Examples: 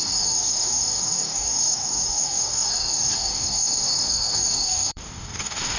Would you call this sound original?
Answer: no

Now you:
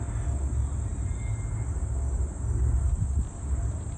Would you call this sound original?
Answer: yes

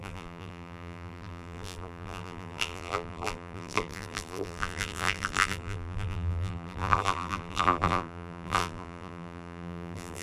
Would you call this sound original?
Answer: no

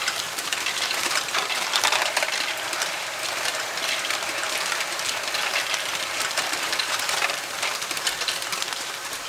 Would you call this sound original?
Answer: no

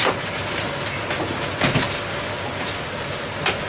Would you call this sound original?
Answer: yes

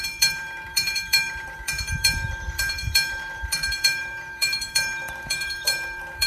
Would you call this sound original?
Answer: no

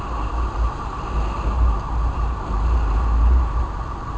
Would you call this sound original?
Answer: no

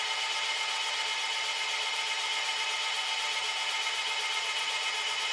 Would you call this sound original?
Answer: yes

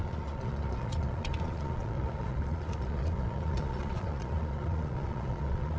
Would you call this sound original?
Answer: no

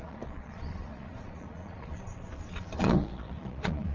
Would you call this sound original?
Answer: no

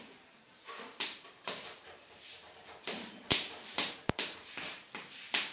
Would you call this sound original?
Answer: no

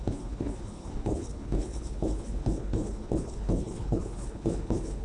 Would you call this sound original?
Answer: no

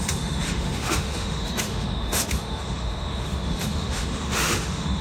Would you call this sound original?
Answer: no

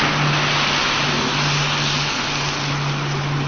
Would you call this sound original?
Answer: yes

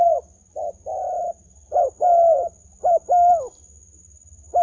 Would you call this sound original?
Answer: yes